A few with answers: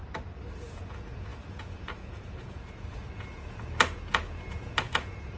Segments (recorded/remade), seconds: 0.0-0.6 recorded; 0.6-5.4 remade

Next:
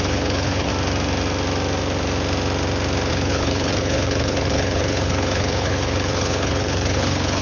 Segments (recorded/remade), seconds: 0.0-0.7 remade; 0.7-3.1 recorded; 3.1-7.4 remade

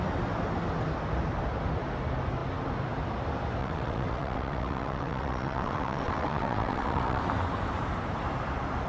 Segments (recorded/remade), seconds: 0.0-3.6 recorded; 3.6-7.2 remade; 7.2-8.9 recorded

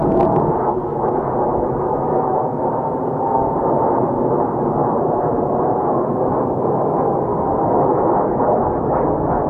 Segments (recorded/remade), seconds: 0.0-4.8 recorded; 4.8-5.8 remade; 5.8-7.3 recorded; 7.3-8.6 remade; 8.6-9.5 recorded

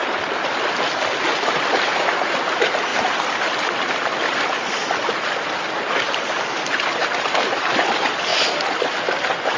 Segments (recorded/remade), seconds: 0.0-1.7 remade; 1.7-2.9 recorded; 2.9-4.5 remade; 4.5-9.6 recorded

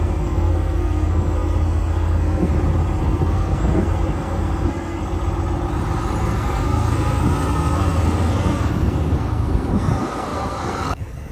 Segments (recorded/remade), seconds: 0.0-2.5 remade; 2.5-3.0 recorded; 3.0-5.0 remade; 5.0-6.2 recorded; 6.2-11.3 remade

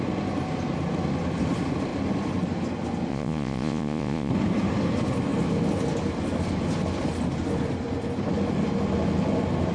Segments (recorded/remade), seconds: 0.0-3.1 recorded; 3.1-4.3 remade; 4.3-9.7 recorded

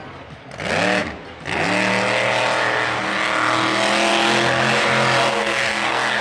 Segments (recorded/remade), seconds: 0.0-5.3 recorded; 5.3-6.2 remade